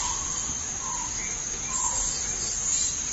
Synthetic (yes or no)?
no